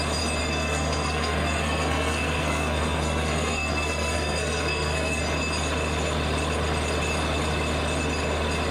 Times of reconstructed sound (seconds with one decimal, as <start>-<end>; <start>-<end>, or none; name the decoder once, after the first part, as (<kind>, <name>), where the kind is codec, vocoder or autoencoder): 0.4-5.2 (codec, SNAC)